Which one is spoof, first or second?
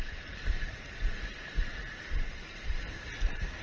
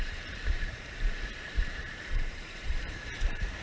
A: second